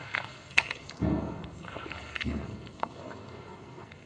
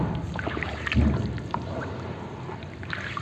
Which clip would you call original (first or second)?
second